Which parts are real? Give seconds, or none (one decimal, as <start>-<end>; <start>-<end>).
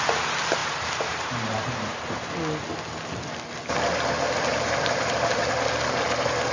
0.0-0.6; 2.3-4.5; 5.5-6.5